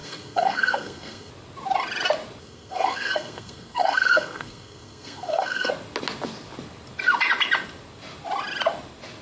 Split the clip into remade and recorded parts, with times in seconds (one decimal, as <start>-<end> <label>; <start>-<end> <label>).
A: 0.0-1.3 remade; 1.3-2.4 recorded; 2.4-5.7 remade; 5.7-9.2 recorded